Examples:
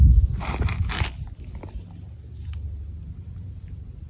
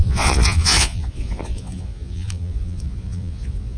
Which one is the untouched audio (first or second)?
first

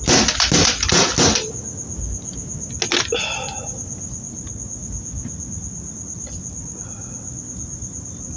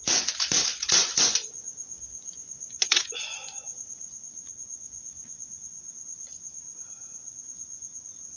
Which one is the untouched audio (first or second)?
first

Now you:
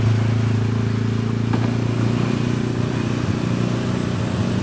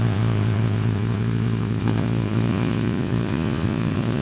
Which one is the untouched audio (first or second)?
first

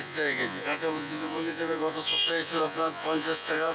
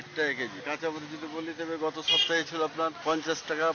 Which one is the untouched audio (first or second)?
second